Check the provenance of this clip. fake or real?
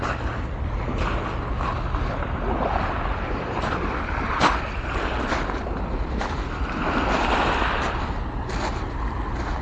real